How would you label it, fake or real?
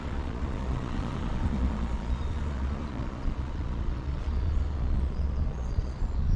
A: fake